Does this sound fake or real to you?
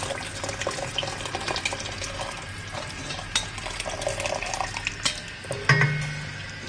real